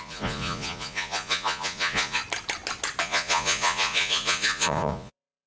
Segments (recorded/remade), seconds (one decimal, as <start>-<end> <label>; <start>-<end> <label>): 0.0-2.2 remade; 2.2-3.0 recorded; 3.0-5.5 remade